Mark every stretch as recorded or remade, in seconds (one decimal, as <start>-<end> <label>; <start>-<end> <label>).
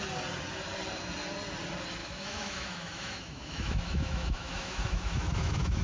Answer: 0.0-2.0 recorded; 2.0-5.8 remade